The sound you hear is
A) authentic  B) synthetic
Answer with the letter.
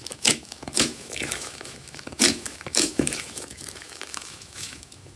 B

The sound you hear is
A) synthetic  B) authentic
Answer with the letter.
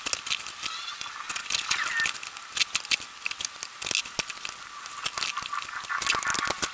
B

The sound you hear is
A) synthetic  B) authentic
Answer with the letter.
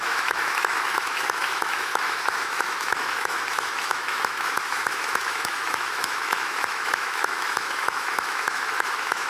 A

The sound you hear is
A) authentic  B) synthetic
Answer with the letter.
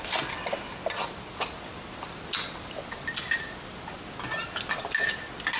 A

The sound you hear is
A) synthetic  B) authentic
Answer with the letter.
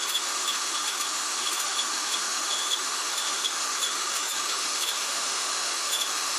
A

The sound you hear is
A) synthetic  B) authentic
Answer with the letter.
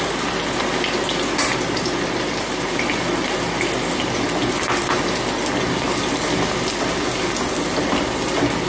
B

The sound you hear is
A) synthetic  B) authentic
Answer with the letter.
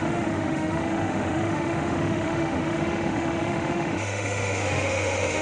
A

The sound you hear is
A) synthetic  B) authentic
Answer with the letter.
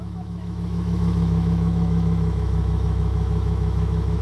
A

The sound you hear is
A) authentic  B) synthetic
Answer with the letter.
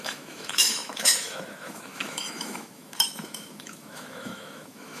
B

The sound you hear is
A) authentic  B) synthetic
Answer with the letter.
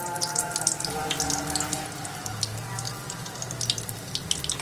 A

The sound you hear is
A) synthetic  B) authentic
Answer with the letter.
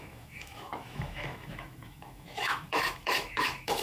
A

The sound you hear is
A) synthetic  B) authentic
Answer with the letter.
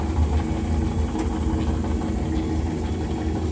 B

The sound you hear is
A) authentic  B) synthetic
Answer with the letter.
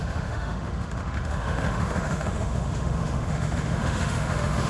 B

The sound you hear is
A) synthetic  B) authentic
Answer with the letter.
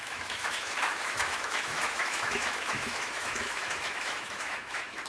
A